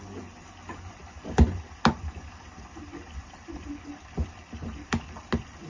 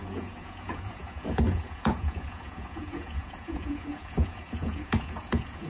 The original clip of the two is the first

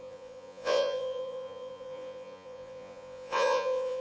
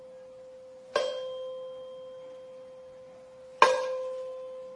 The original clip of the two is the second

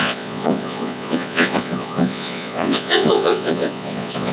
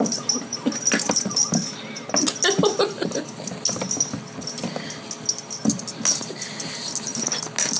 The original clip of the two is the second